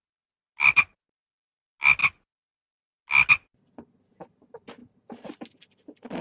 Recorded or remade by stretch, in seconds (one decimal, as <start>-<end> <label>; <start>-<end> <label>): 0.0-6.2 recorded